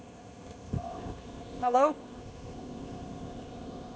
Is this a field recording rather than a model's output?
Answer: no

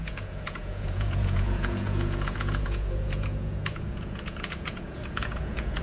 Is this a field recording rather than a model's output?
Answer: no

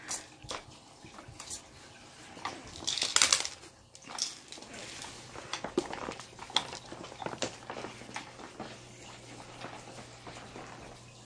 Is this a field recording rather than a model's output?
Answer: yes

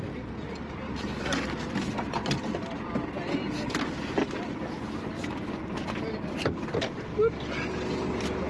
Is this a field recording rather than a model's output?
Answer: no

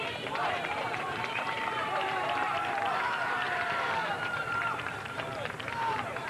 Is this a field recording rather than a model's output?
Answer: no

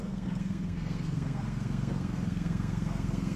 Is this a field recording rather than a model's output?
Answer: no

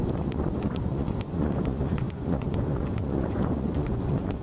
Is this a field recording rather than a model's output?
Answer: no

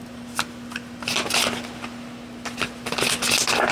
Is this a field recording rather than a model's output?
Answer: yes